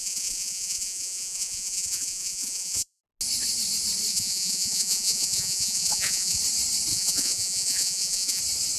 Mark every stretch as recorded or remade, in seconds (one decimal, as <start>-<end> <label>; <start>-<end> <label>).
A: 0.0-3.0 remade; 3.0-4.1 recorded; 4.1-6.4 remade; 6.4-6.9 recorded; 6.9-8.4 remade; 8.4-8.8 recorded